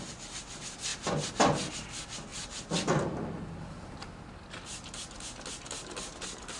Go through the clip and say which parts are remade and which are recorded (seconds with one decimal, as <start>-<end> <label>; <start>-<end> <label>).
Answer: 0.0-2.3 recorded; 2.3-3.4 remade; 3.4-6.6 recorded